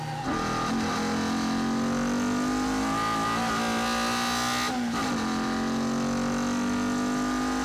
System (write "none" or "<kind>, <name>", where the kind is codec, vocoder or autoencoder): none